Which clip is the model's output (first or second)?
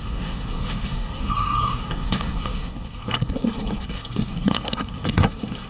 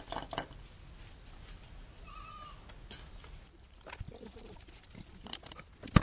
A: first